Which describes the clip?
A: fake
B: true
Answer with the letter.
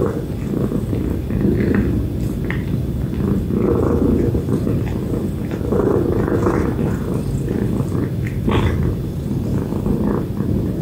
B